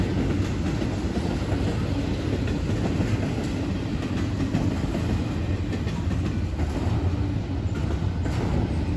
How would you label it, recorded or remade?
recorded